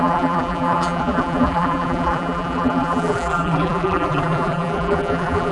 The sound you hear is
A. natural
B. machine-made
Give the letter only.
B